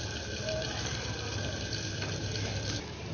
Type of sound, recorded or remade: recorded